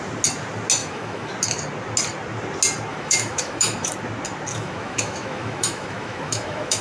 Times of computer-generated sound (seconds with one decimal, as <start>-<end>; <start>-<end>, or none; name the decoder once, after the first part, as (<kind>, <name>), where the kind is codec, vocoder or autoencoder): 0.8-1.3 (autoencoder, DAC-VAE); 2.9-3.9; 4.5-6.8